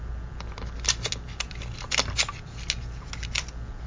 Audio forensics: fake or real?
real